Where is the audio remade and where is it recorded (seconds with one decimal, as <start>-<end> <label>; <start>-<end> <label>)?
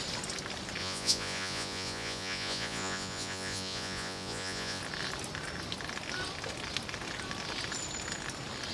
0.0-0.8 recorded; 0.8-4.8 remade; 4.8-8.7 recorded